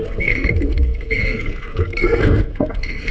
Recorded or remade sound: remade